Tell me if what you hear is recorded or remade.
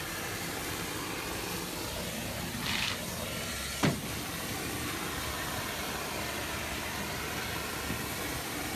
recorded